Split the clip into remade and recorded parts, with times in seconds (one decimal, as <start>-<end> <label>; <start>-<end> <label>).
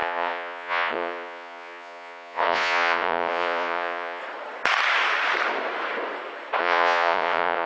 0.0-4.2 remade; 4.2-6.6 recorded; 6.6-7.7 remade